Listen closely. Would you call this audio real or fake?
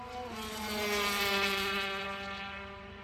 fake